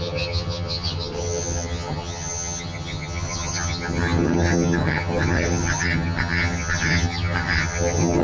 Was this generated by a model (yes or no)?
yes